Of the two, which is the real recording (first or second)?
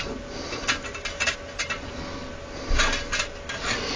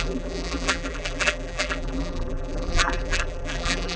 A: first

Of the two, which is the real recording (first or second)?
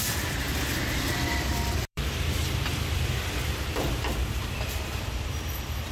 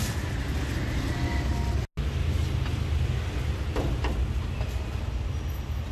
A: second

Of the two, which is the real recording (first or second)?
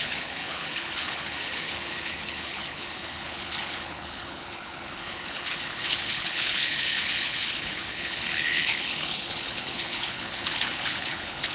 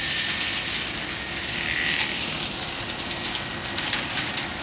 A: second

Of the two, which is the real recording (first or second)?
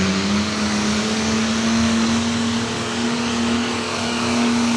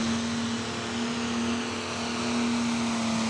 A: second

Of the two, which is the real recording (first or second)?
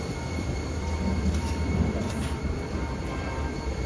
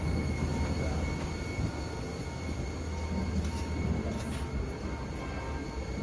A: second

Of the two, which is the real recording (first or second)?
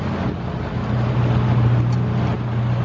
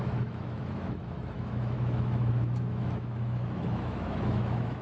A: first